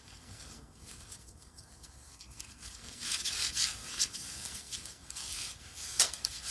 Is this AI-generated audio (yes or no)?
yes